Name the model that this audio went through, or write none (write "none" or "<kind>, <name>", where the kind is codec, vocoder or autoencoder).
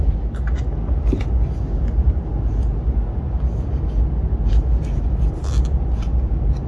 none